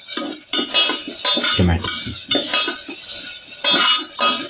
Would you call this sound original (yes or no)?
yes